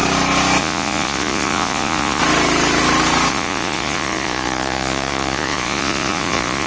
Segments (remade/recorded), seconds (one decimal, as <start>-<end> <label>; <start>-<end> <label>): 0.0-0.6 recorded; 0.6-2.2 remade; 2.2-3.3 recorded; 3.3-6.7 remade